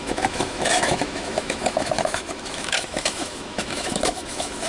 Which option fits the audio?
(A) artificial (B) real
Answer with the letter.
A